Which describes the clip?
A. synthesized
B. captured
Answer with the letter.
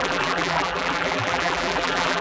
A